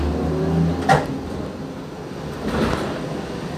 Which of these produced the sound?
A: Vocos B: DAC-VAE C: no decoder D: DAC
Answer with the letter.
C